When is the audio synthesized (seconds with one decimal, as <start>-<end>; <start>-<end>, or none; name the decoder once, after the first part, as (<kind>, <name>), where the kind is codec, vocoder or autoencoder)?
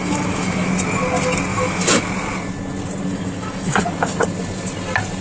0.0-0.7 (autoencoder, DAC-VAE); 1.5-2.0; 3.1-3.8